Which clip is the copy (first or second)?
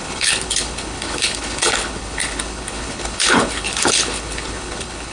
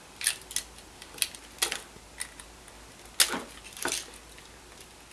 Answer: first